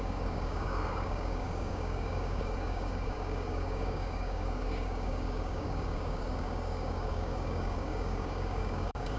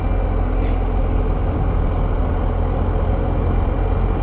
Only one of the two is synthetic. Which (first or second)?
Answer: first